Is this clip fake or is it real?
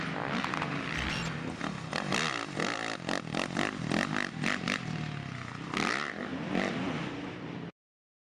real